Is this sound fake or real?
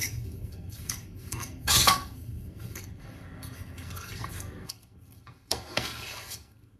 fake